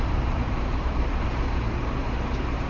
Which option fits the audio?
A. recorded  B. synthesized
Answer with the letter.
B